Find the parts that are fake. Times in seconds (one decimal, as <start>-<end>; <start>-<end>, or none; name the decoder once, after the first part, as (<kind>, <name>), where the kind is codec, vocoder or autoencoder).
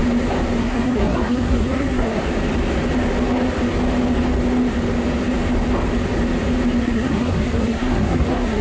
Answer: 0.6-2.2 (codec, SNAC); 6.8-8.6